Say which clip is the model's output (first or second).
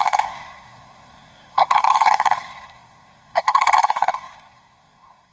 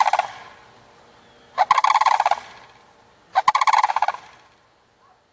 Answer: first